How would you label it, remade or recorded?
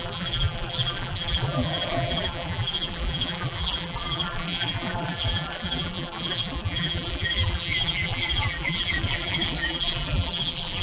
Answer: remade